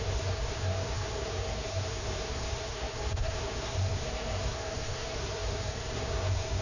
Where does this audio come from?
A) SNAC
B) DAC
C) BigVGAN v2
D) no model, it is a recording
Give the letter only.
A